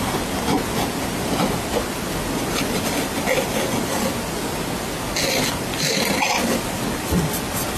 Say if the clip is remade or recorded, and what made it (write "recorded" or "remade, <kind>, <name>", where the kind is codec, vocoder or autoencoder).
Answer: recorded